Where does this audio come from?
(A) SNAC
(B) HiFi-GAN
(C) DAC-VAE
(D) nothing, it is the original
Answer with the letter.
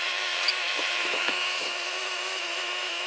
C